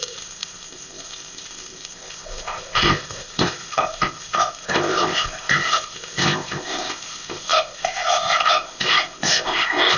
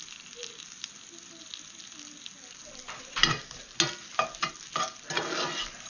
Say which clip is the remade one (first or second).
first